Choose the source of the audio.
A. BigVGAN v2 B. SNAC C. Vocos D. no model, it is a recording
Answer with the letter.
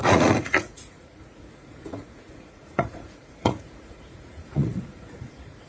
C